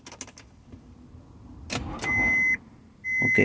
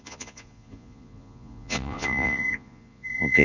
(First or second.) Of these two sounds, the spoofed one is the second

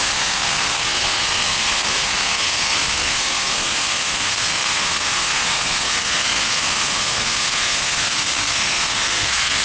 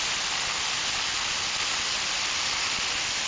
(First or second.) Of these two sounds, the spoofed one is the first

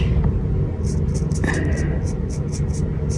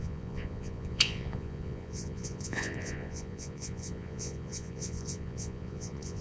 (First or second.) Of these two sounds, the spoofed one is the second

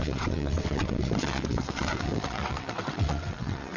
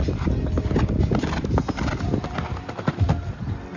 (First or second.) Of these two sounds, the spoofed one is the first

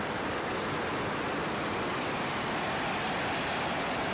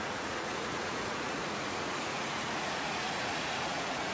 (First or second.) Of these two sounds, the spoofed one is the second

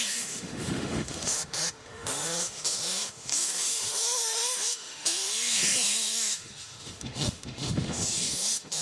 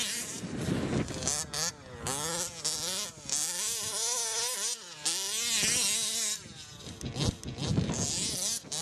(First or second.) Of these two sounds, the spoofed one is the first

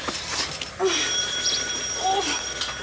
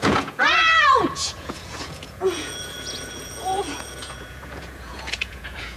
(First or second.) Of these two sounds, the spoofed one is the second